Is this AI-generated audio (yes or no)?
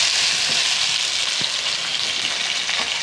no